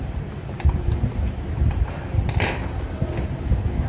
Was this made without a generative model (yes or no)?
no